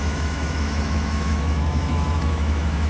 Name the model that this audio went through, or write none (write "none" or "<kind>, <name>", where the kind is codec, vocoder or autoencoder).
autoencoder, DAC-VAE